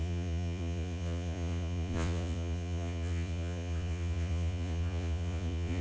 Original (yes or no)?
no